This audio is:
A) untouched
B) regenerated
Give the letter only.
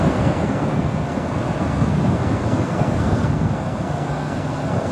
B